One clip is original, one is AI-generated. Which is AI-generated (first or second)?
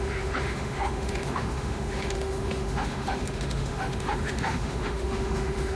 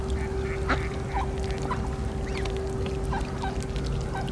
first